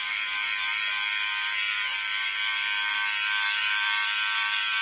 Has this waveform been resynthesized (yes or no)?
yes